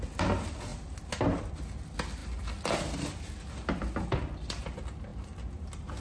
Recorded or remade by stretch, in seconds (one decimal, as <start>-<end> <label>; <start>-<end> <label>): 0.0-6.0 recorded